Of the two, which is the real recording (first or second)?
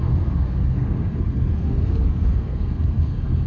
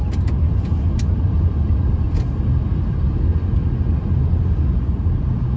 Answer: second